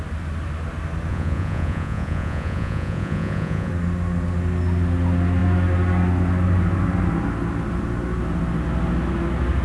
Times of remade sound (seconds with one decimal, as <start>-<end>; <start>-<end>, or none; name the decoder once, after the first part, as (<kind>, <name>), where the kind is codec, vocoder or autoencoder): 1.1-3.7 (vocoder, Vocos)